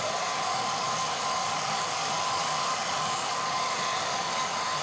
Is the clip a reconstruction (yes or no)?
yes